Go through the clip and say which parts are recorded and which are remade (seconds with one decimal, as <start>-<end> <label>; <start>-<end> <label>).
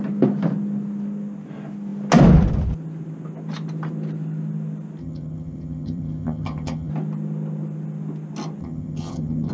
0.0-5.0 recorded; 5.0-6.9 remade; 6.9-8.6 recorded; 8.6-9.5 remade